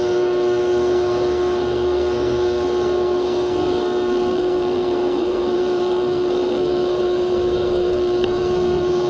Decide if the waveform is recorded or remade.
remade